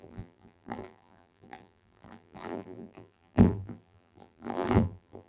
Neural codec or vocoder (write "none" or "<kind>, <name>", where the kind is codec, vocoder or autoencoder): vocoder, BigVGAN v2